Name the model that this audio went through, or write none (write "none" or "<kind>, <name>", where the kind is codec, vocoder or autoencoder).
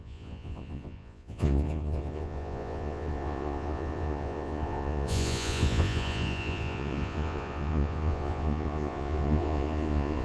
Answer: vocoder, Vocos